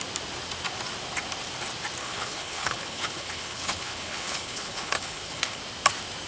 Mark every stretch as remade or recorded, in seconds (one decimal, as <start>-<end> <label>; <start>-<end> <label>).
0.0-2.0 recorded; 2.0-5.6 remade; 5.6-6.3 recorded